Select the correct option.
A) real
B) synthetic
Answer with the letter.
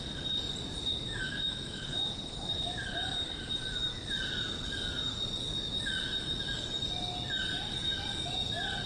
A